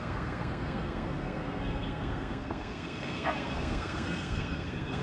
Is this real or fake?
fake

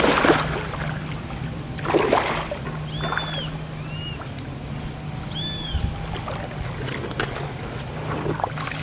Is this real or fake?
real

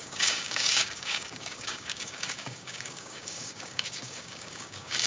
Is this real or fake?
fake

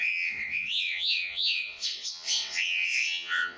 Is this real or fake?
fake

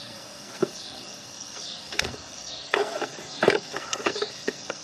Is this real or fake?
fake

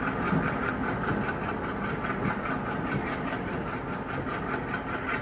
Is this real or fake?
real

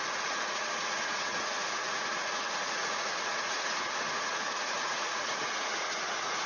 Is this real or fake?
fake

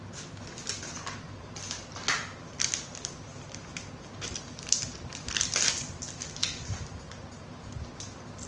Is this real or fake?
real